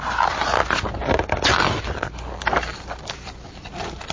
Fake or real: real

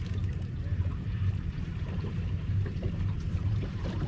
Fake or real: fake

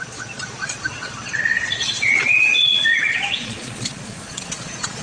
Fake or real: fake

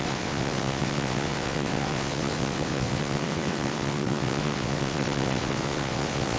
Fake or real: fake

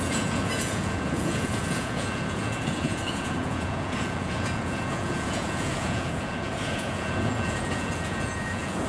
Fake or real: fake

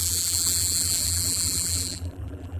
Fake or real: fake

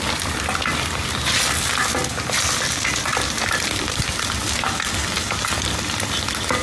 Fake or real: real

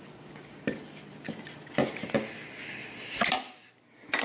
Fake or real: real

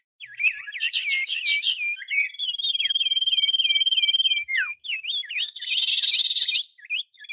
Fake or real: real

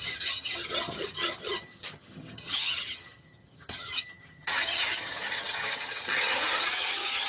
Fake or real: fake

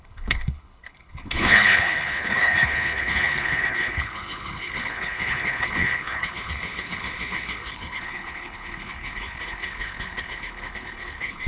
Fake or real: fake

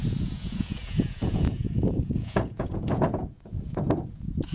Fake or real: fake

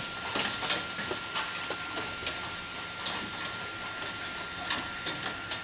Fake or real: real